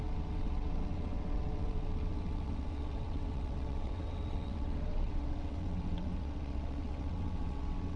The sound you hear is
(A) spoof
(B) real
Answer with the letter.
A